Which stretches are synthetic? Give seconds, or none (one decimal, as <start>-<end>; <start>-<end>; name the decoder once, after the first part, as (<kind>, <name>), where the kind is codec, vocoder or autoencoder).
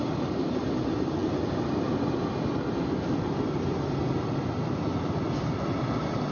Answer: none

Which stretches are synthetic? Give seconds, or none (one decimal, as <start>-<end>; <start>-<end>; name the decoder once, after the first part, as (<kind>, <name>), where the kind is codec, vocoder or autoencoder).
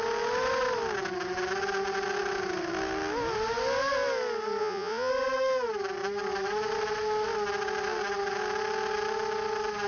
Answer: 4.6-5.1 (vocoder, Vocos)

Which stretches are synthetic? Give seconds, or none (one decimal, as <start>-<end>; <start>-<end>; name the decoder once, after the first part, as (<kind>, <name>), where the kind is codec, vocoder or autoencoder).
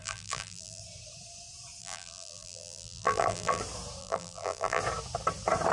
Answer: 0.0-0.8 (vocoder, BigVGAN v2); 1.8-3.6; 4.0-4.8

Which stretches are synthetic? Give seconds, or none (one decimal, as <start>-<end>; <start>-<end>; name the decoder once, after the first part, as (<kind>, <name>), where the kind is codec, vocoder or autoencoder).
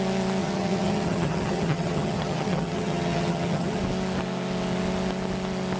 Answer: 0.4-3.8 (vocoder, HiFi-GAN)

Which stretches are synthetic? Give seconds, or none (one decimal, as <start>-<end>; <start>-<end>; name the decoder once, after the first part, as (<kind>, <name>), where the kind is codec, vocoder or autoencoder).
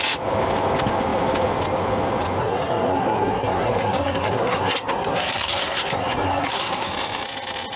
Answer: 2.4-6.9 (codec, SNAC)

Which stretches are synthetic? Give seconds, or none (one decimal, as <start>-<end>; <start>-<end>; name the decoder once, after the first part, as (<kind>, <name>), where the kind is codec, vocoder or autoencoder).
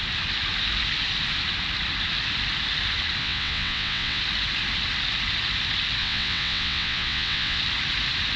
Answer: 3.2-4.2 (vocoder, WaveNeXt); 6.0-7.6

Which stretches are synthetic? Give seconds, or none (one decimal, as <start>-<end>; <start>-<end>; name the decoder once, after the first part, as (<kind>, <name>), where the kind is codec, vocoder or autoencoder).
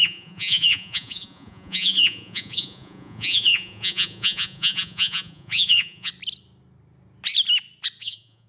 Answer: 0.0-6.1 (vocoder, Vocos); 8.0-8.5